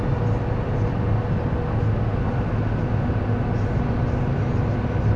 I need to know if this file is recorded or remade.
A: recorded